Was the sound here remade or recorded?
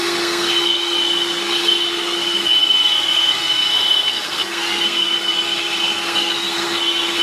remade